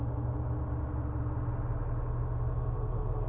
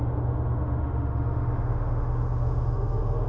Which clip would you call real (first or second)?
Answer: first